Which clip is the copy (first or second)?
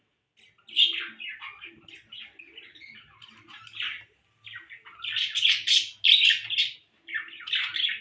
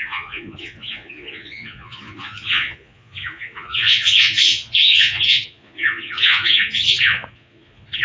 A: second